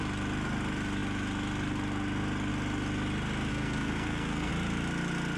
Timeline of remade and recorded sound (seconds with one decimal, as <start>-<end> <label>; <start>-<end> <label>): 0.0-3.5 recorded; 3.5-4.5 remade; 4.5-5.4 recorded